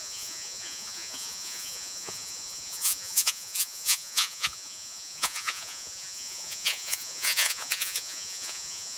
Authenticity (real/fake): fake